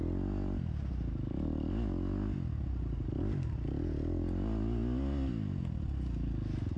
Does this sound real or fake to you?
real